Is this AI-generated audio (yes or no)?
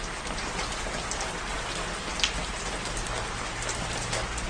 no